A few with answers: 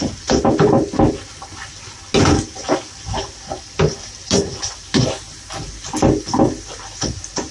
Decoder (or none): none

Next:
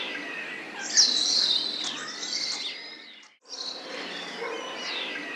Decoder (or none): none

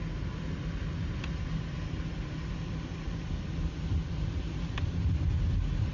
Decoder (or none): none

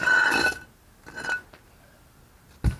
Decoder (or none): none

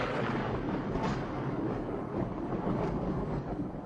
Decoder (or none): codec, DAC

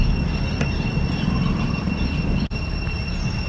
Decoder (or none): none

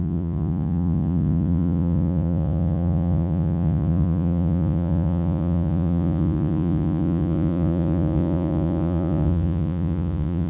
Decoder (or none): vocoder, Vocos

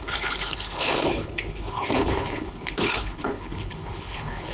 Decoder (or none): codec, HILCodec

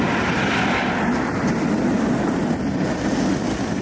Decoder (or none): none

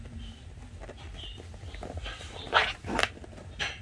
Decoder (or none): none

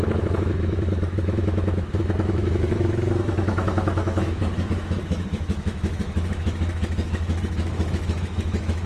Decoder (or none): autoencoder, DAC-VAE